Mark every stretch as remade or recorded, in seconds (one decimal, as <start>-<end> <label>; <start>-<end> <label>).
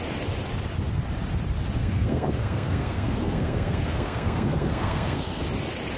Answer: 0.0-1.8 recorded; 1.8-5.4 remade; 5.4-6.0 recorded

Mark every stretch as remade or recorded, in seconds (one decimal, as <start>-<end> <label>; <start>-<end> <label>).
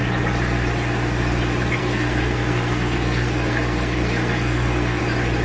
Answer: 0.0-1.8 recorded; 1.8-5.0 remade; 5.0-5.4 recorded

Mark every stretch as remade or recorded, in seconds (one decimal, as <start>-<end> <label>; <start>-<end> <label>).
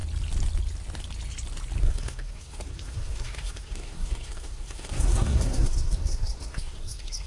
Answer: 0.0-1.8 recorded; 1.8-7.3 remade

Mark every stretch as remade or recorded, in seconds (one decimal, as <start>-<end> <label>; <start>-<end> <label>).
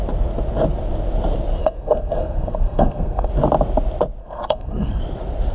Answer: 0.0-1.6 recorded; 1.6-3.3 remade; 3.3-4.2 recorded; 4.2-5.0 remade; 5.0-5.5 recorded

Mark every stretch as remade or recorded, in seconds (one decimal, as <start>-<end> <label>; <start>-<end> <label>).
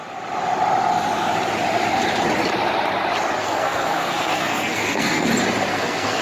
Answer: 0.0-3.4 recorded; 3.4-5.3 remade; 5.3-5.7 recorded; 5.7-6.2 remade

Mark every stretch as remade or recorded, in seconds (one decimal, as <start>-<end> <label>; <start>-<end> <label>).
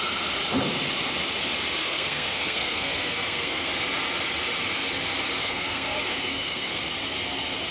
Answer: 0.0-1.8 recorded; 1.8-3.7 remade; 3.7-5.4 recorded; 5.4-6.8 remade; 6.8-7.7 recorded